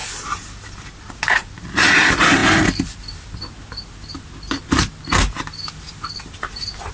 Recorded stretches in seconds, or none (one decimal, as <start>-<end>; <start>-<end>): 0.0-6.9